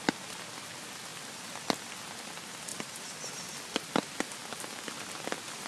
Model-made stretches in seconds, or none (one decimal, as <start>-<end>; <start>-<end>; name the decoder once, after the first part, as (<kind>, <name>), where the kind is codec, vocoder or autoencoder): none